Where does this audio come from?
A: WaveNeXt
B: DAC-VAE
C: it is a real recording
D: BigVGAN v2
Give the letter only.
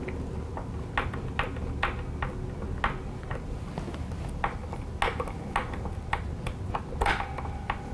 C